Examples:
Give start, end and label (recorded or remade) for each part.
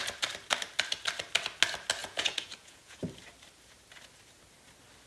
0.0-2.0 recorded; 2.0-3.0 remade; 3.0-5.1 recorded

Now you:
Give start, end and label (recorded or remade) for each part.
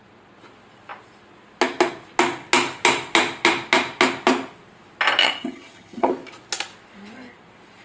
0.0-5.2 recorded; 5.2-6.1 remade; 6.1-7.8 recorded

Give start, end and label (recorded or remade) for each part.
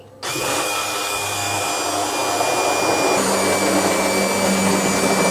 0.0-0.4 recorded; 0.4-1.7 remade; 1.7-5.3 recorded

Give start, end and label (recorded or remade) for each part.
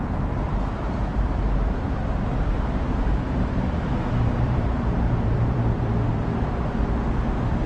0.0-1.1 recorded; 1.1-1.9 remade; 1.9-2.5 recorded; 2.5-6.6 remade; 6.6-7.7 recorded